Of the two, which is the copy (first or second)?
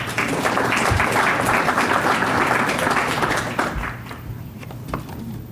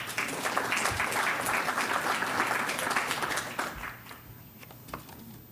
first